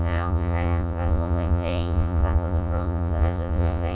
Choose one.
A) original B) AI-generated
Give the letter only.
B